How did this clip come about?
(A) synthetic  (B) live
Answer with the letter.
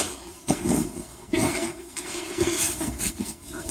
A